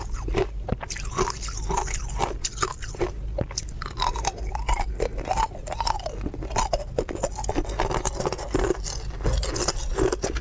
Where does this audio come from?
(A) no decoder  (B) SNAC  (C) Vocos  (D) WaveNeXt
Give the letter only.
A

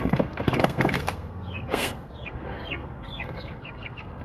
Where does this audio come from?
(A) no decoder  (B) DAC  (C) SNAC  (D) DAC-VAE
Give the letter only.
C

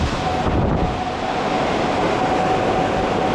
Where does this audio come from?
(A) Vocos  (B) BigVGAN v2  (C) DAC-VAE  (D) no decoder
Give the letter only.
D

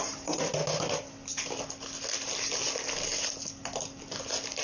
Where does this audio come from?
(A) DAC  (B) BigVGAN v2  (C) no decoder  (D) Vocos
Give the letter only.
C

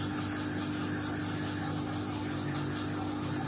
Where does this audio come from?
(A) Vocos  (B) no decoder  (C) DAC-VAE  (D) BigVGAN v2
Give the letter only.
B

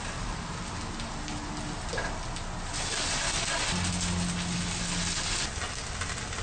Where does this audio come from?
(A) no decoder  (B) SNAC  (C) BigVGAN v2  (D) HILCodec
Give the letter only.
A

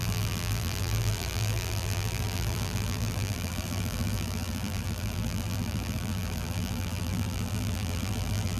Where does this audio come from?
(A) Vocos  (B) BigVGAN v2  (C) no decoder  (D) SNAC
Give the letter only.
B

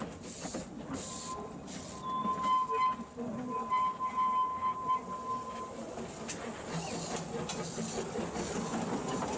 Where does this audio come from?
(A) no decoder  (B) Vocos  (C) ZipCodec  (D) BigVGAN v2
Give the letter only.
A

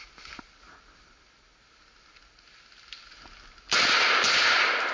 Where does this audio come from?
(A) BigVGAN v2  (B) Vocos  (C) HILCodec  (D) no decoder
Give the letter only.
D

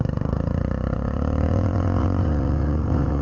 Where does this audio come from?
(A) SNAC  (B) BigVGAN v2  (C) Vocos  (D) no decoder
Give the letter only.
C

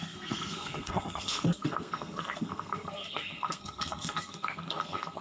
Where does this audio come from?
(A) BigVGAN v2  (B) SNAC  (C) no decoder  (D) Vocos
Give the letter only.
B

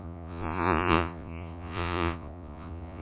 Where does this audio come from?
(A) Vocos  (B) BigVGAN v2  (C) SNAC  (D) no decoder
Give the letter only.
A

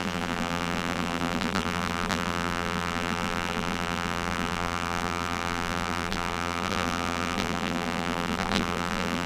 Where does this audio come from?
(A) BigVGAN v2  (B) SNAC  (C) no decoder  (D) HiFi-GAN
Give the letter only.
A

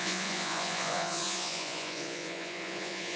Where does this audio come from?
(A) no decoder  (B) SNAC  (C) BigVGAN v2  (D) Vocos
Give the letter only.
D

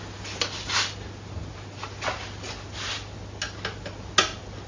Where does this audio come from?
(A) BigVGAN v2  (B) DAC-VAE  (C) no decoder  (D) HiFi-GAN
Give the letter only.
C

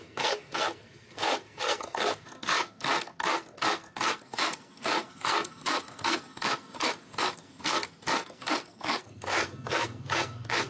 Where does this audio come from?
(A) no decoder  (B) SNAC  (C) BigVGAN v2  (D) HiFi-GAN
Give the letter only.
B